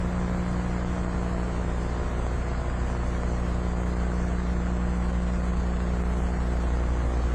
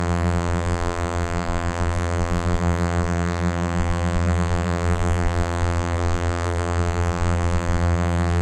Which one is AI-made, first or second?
second